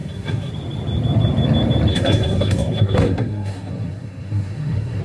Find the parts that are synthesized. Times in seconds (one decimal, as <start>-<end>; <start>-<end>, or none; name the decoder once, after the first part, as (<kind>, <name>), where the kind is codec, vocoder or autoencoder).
0.0-0.5 (codec, SNAC); 1.9-5.0